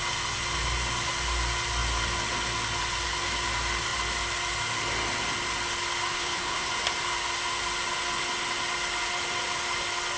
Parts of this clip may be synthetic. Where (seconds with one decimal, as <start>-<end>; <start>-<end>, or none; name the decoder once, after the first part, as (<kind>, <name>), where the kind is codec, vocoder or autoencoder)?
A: 6.1-6.7 (codec, HILCodec)

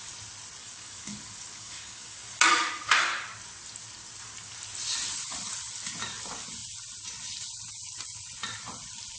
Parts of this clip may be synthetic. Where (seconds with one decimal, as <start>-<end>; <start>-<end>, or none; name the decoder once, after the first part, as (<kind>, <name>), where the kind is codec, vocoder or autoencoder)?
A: 0.6-2.7 (codec, DAC)

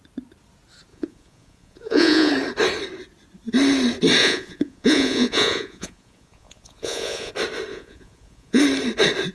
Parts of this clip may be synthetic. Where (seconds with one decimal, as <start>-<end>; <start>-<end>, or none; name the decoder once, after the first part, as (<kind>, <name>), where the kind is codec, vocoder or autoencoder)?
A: 0.9-2.3 (vocoder, Vocos); 4.2-7.3; 7.7-8.6

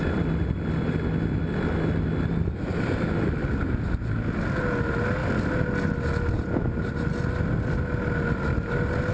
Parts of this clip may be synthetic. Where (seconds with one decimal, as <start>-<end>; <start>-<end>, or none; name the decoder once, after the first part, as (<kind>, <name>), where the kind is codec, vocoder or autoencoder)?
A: none

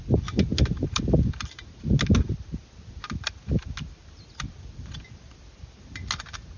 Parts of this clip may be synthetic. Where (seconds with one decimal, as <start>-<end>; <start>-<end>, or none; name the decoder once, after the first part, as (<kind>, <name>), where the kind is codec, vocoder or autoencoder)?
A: none

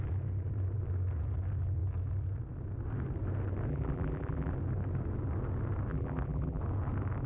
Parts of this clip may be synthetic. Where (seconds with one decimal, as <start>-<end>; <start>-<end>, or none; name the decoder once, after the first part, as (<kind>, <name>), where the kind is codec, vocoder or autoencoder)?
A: 3.7-4.5 (vocoder, BigVGAN v2); 5.9-6.6